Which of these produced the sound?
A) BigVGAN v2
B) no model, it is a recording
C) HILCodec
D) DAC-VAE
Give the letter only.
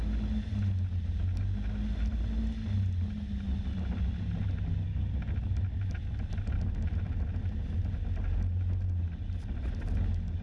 B